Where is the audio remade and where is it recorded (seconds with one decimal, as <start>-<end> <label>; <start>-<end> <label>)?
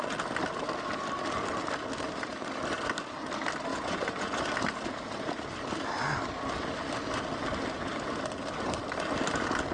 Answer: 0.0-3.7 recorded; 3.7-4.4 remade; 4.4-9.7 recorded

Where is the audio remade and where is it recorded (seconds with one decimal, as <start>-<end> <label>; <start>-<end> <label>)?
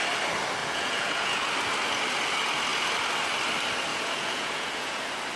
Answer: 0.0-0.6 recorded; 0.6-1.5 remade; 1.5-3.9 recorded; 3.9-5.0 remade; 5.0-5.4 recorded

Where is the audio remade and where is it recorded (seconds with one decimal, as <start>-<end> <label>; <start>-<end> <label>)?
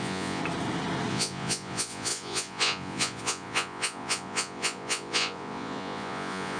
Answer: 0.0-0.4 remade; 0.4-1.1 recorded; 1.1-6.6 remade